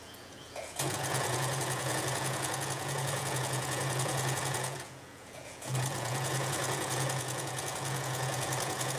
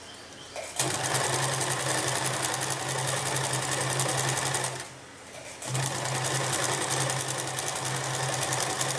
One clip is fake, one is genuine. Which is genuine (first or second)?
second